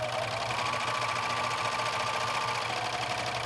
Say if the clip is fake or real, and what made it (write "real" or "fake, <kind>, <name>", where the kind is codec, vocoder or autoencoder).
real